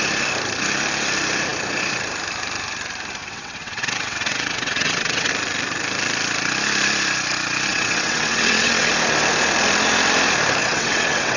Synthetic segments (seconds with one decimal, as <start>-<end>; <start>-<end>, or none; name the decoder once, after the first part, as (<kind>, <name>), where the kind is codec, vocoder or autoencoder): 3.2-5.3 (vocoder, WaveNeXt); 7.7-8.9; 10.6-11.4